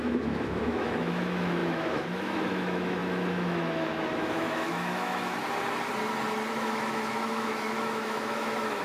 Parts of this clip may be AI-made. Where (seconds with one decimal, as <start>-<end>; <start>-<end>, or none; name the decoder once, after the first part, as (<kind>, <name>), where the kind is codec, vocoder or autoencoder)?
0.0-5.4 (autoencoder, DAC-VAE); 6.5-8.8

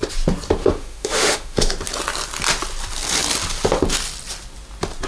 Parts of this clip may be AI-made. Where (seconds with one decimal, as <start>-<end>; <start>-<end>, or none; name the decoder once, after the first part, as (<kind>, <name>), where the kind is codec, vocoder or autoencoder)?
0.6-1.7 (autoencoder, DAC-VAE)

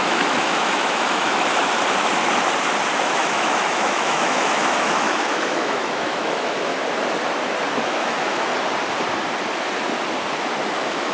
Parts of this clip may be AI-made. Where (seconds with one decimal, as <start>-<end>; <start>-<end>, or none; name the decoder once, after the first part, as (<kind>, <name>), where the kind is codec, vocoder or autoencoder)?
0.0-1.5 (autoencoder, DAC-VAE); 3.1-6.7; 7.8-8.5; 10.7-11.1

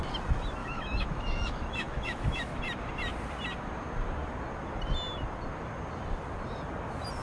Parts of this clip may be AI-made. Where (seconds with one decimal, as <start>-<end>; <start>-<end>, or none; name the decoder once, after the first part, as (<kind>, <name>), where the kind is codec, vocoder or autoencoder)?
0.6-2.6 (autoencoder, DAC-VAE)

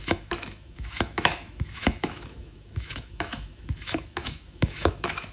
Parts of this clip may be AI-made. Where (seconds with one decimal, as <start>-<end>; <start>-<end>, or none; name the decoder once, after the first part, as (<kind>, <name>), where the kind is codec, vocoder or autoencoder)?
0.0-5.3 (autoencoder, DAC-VAE)

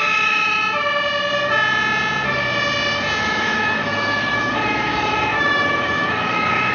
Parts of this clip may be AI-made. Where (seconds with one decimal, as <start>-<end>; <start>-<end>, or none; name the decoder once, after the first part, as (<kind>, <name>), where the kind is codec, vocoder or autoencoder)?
0.0-0.6 (autoencoder, DAC-VAE); 3.2-6.7